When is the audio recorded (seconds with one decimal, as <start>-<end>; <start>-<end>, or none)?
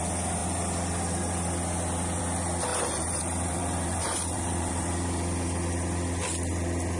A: 0.0-2.7; 4.9-7.0